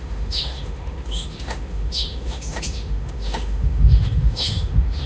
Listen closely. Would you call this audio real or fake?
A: fake